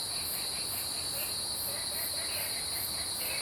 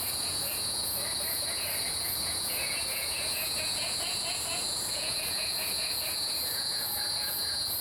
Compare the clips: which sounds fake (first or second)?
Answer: second